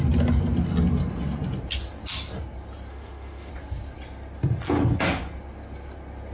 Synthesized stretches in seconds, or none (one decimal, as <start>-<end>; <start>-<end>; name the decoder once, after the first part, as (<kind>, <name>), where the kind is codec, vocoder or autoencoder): 2.9-3.5 (autoencoder, DAC-VAE)